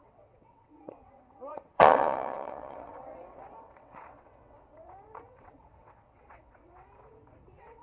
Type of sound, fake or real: fake